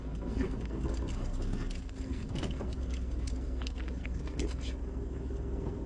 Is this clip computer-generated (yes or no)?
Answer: yes